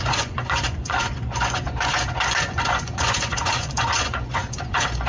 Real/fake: fake